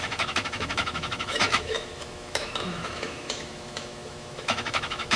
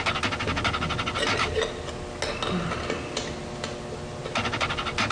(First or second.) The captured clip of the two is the second